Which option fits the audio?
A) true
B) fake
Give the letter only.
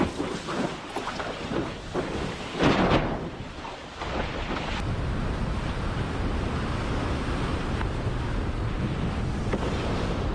A